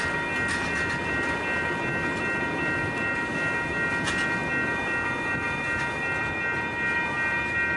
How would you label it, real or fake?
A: real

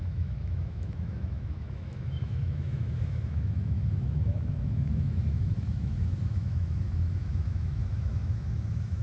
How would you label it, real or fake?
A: fake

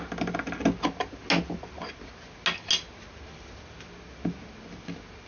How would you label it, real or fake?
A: real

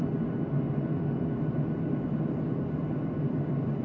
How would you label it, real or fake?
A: real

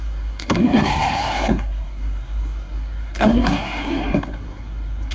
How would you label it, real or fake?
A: fake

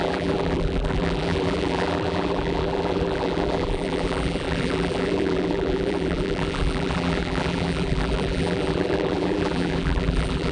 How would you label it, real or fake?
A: fake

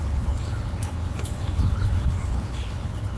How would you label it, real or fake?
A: fake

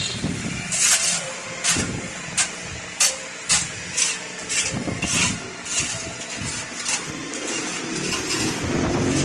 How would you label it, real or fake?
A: real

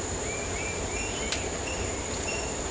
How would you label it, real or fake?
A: fake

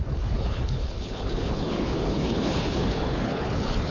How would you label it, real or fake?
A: fake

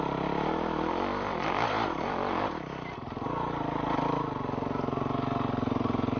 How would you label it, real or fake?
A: real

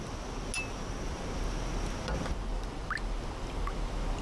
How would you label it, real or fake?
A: real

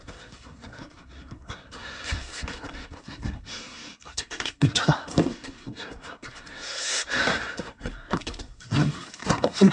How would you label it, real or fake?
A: fake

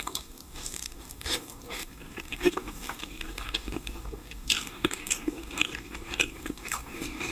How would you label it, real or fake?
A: fake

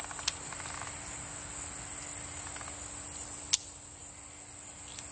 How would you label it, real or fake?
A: real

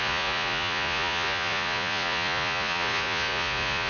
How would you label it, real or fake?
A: fake